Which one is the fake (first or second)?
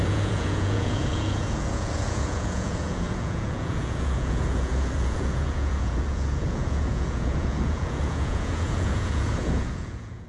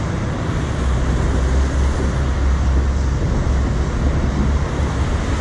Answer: first